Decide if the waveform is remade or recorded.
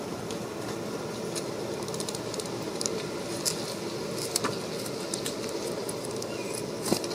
recorded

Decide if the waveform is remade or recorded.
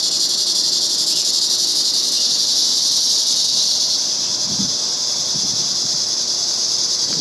remade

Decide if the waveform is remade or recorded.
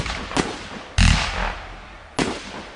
recorded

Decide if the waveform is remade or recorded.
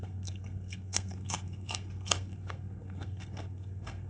remade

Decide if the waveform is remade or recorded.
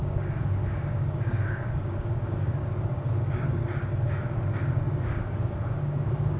remade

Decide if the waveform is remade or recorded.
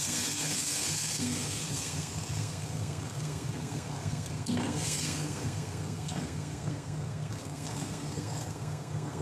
remade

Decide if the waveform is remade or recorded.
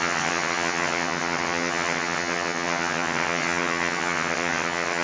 remade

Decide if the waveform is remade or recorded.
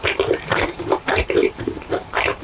remade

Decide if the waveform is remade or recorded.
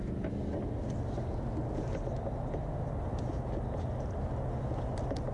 recorded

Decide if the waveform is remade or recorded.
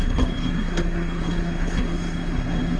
remade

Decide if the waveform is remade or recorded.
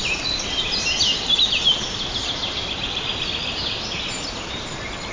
recorded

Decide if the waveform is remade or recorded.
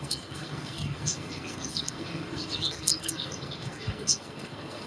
remade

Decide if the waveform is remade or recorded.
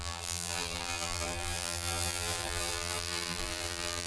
remade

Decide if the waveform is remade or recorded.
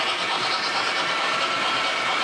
recorded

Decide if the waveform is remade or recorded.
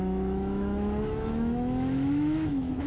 remade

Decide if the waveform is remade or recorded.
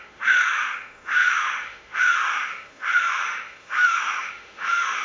remade